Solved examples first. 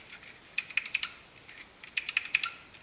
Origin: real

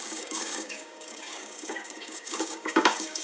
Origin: fake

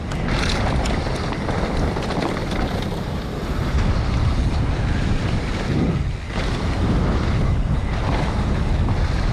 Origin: real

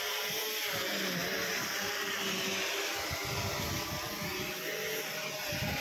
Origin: real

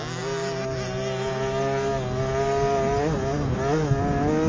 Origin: real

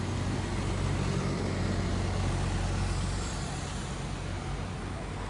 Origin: real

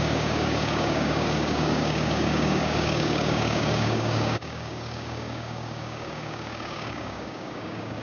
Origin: fake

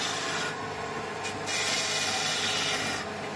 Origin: real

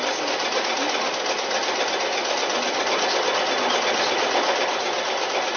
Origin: real